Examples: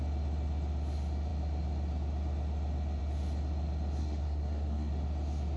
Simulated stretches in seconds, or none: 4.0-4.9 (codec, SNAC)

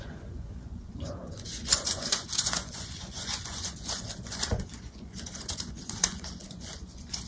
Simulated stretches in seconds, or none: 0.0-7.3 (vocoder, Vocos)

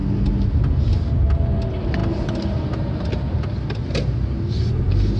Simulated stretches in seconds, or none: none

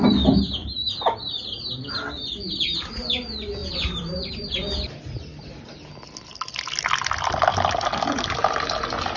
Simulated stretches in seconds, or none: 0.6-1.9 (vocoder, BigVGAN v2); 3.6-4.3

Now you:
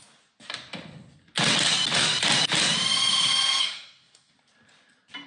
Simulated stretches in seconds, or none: 3.6-4.3 (codec, SNAC)